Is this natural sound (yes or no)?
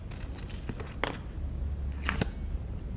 yes